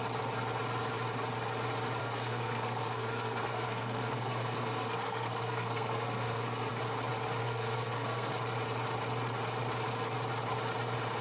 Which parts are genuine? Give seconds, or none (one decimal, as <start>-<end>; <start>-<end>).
0.0-2.0; 6.7-7.4; 8.3-11.2